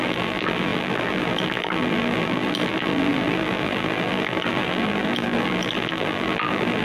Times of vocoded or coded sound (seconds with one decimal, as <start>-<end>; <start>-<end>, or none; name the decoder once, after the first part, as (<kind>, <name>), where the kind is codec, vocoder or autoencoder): 0.0-6.8 (vocoder, BigVGAN v2)